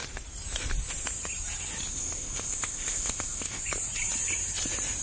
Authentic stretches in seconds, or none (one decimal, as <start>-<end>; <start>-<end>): 0.0-1.9; 3.6-5.0